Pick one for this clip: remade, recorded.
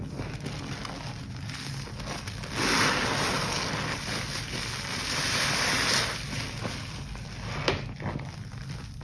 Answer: recorded